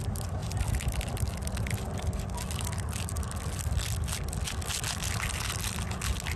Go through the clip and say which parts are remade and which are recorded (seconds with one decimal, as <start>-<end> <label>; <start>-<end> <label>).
0.0-6.4 recorded